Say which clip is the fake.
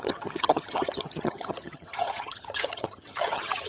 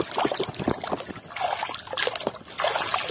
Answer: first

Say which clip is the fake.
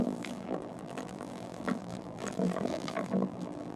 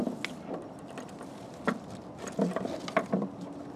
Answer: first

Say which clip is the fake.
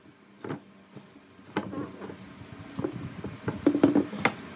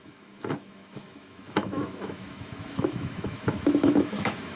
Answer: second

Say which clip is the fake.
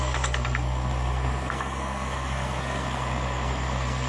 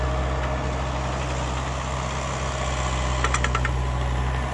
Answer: first